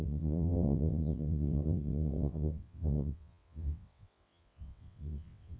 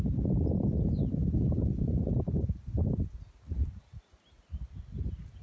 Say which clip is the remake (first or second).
first